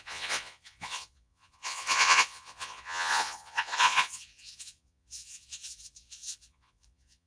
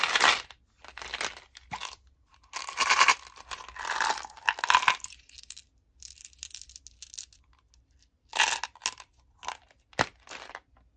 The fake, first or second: first